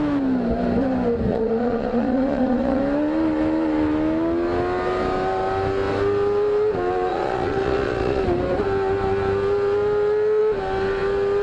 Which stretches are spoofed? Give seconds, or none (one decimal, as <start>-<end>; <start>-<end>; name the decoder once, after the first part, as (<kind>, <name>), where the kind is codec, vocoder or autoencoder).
1.3-2.8 (vocoder, Vocos); 7.1-8.2